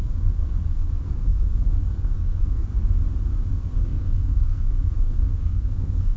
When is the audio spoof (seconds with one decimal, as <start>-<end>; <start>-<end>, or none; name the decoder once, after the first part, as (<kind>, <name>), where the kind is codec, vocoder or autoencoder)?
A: 0.0-2.7 (codec, SNAC); 3.5-6.2